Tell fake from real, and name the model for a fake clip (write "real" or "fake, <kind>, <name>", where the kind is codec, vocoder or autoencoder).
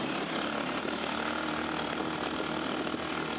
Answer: real